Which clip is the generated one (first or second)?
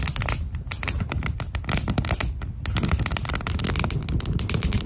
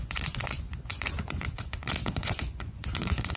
second